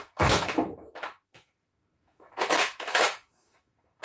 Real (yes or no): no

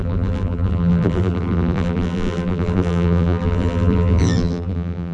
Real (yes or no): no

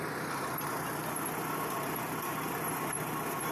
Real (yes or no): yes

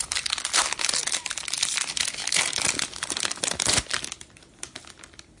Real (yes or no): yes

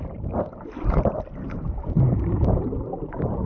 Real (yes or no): no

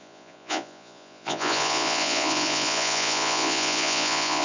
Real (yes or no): no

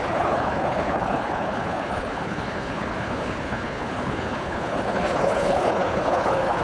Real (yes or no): no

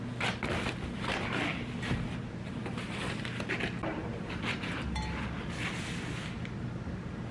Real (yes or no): yes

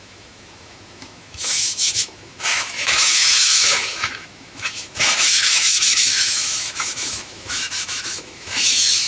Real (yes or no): no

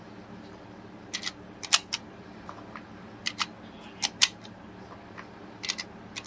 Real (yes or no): yes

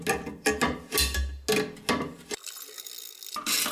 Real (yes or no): yes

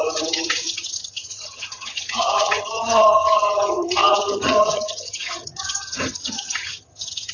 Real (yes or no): no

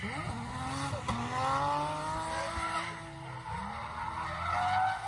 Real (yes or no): yes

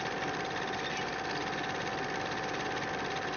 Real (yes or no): yes